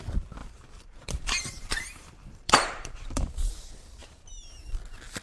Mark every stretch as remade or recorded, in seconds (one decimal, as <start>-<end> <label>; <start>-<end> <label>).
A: 0.0-0.4 recorded; 0.4-3.5 remade; 3.5-4.0 recorded; 4.0-4.7 remade; 4.7-5.2 recorded